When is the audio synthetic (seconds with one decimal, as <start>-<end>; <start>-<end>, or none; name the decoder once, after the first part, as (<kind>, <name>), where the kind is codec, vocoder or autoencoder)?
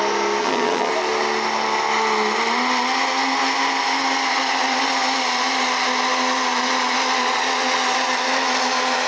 0.4-0.9 (vocoder, HiFi-GAN)